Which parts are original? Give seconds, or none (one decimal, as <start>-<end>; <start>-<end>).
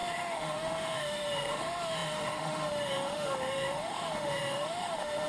none